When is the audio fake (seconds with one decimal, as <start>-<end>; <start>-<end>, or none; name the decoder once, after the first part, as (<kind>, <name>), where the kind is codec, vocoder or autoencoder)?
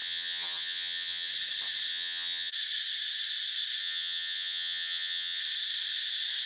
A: 0.0-1.3 (vocoder, HiFi-GAN); 1.9-2.5; 3.8-5.4